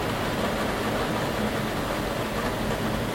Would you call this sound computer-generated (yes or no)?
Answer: no